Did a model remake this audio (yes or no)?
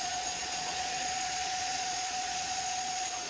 yes